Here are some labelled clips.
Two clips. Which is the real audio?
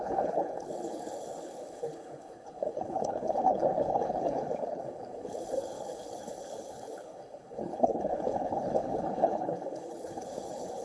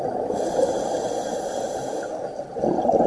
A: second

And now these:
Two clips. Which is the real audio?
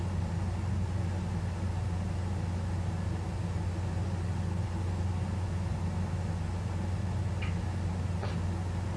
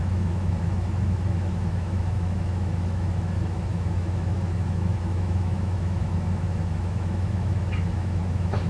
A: first